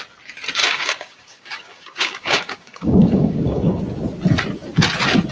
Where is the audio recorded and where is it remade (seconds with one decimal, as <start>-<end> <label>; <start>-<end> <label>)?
0.0-0.6 recorded; 0.6-3.8 remade; 3.8-5.3 recorded